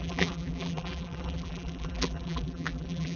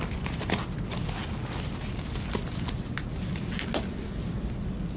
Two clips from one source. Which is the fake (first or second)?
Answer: first